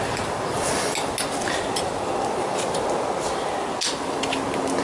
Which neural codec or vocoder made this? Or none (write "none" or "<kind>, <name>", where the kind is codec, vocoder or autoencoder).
none